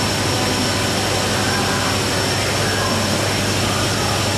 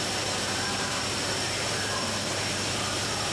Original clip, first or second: first